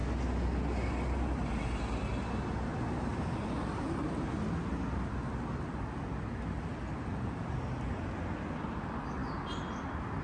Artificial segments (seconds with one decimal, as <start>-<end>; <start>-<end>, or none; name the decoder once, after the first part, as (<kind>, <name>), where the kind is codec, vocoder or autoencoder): none

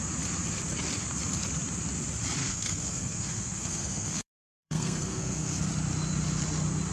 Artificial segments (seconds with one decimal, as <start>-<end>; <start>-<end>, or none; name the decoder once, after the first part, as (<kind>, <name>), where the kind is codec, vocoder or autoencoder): 2.4-5.6 (codec, SNAC)

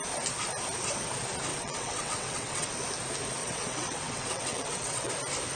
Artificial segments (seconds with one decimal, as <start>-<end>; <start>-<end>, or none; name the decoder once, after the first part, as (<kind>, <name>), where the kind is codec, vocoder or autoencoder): 1.5-2.7 (vocoder, WaveNeXt); 3.4-5.1

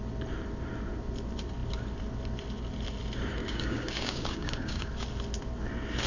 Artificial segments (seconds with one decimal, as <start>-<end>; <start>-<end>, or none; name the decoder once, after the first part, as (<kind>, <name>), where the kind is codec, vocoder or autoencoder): 3.4-4.9 (codec, DAC)

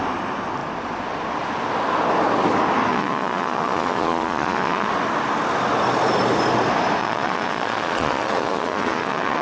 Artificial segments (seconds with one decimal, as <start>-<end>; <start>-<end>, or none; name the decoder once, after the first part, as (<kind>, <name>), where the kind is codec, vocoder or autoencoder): 2.9-4.9 (vocoder, Vocos); 7.0-9.4